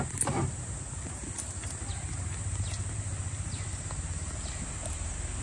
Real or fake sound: real